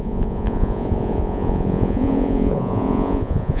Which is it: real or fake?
fake